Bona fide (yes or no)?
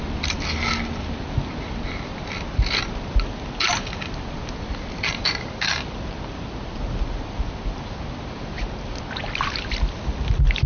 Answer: yes